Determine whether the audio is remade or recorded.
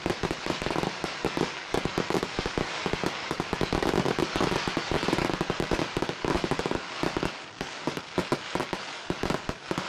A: remade